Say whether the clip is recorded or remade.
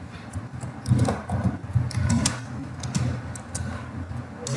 recorded